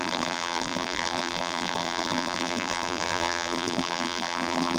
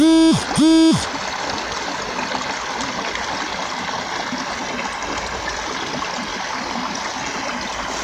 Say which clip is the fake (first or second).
first